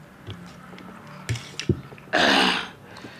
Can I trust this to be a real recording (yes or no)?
yes